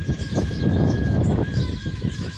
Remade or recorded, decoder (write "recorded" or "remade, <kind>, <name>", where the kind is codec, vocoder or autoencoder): remade, autoencoder, DAC-VAE